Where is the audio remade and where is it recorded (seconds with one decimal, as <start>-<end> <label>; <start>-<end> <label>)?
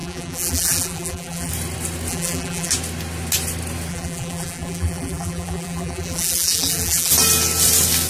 0.0-1.5 remade; 1.5-2.1 recorded; 2.1-2.7 remade; 2.7-3.9 recorded; 3.9-7.1 remade; 7.1-8.1 recorded